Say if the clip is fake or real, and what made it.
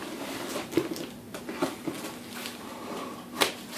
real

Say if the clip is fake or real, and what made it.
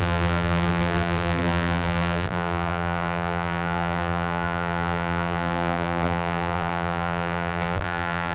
fake, vocoder, BigVGAN v2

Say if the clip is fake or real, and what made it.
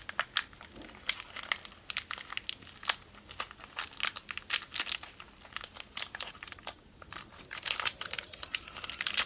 real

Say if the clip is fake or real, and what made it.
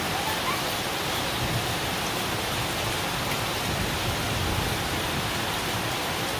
real